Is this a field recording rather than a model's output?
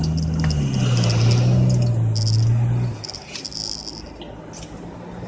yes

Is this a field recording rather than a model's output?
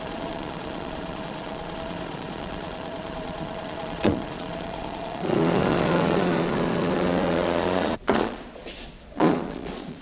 no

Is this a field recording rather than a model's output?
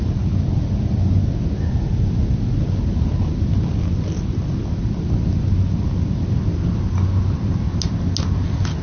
yes